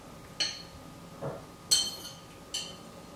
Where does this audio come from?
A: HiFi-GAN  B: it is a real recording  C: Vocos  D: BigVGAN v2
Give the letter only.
B